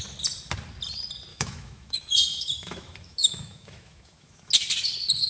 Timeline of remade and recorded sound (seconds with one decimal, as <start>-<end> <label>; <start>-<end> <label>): 0.0-1.3 recorded; 1.3-4.5 remade; 4.5-5.3 recorded